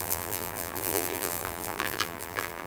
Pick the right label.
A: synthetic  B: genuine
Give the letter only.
A